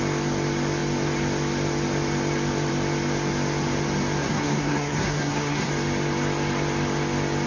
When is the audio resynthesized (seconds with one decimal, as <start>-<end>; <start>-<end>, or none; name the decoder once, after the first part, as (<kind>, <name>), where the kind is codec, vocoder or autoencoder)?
4.2-5.7 (codec, SNAC)